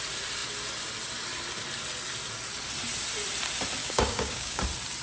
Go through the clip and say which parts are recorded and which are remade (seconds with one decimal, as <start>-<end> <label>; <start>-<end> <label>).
0.0-3.8 recorded; 3.8-4.6 remade; 4.6-5.0 recorded